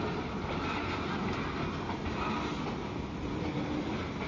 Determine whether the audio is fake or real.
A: real